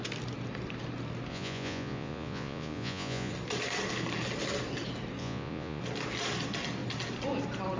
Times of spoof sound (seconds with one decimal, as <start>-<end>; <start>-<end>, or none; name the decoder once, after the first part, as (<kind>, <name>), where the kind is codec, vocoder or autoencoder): 1.3-3.3 (vocoder, Vocos); 5.2-5.8